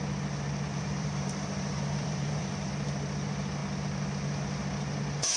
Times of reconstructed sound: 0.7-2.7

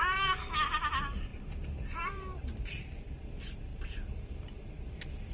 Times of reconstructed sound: 1.3-2.8; 3.7-5.3

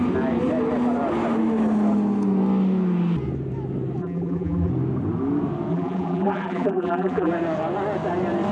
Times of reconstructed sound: 4.0-4.7; 5.7-7.3

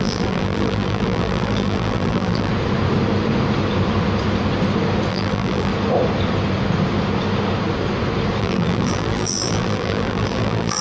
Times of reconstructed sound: 0.0-2.5; 5.1-5.7; 8.4-10.8

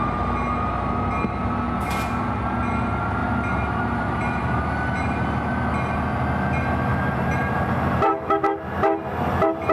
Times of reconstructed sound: 3.2-4.6; 6.9-8.1

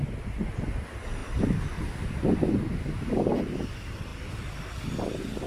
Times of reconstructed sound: none

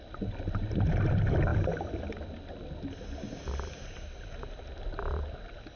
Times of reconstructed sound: none

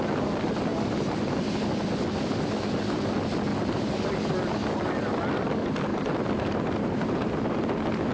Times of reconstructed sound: 0.7-1.4; 5.9-7.3